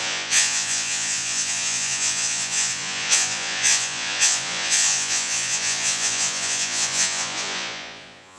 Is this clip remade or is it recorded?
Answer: remade